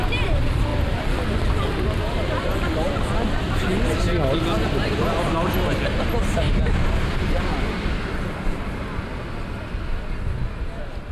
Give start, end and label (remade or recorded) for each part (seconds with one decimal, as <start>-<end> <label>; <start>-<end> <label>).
0.0-11.1 recorded